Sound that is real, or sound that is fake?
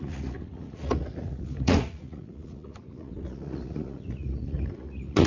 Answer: fake